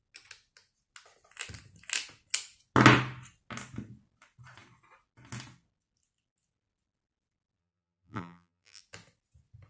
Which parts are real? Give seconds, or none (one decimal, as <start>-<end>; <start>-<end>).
0.0-7.6; 8.8-9.7